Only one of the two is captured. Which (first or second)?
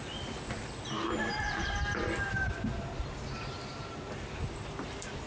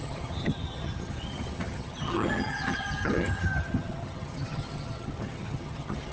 first